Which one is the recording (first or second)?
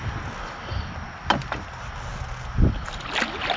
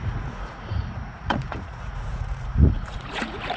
first